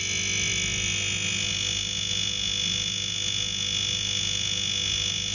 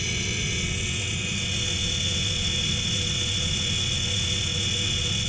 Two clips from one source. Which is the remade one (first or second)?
second